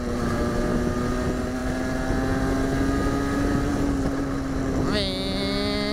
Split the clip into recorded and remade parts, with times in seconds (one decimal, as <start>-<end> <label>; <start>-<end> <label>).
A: 0.0-5.9 recorded

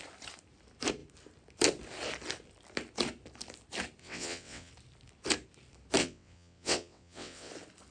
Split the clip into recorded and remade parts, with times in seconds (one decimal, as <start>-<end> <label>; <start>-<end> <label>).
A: 0.0-4.0 recorded; 4.0-4.7 remade; 4.7-6.0 recorded; 6.0-7.5 remade; 7.5-7.9 recorded

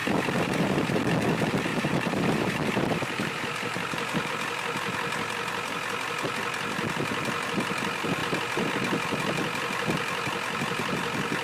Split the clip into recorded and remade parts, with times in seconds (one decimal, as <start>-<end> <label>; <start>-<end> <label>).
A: 0.0-1.0 remade; 1.0-1.7 recorded; 1.7-4.3 remade; 4.3-11.4 recorded

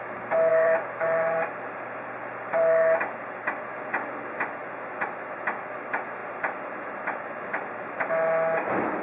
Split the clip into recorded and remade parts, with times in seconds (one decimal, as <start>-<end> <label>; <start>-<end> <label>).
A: 0.0-0.5 recorded; 0.5-3.0 remade; 3.0-4.6 recorded; 4.6-5.2 remade; 5.2-6.2 recorded; 6.2-8.1 remade; 8.1-9.0 recorded

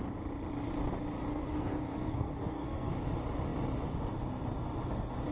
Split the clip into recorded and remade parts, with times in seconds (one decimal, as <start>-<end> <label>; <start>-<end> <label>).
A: 0.0-1.3 recorded; 1.3-2.9 remade; 2.9-5.3 recorded